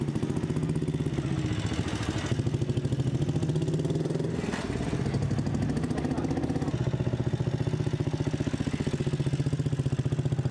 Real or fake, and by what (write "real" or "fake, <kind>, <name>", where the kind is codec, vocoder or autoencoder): real